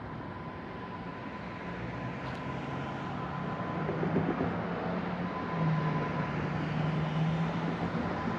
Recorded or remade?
recorded